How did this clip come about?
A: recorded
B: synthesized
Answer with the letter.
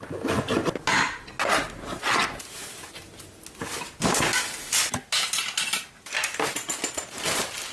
A